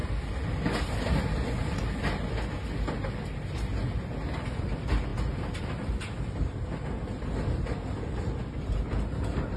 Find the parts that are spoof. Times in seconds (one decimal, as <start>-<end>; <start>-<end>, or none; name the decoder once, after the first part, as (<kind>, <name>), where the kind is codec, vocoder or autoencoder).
none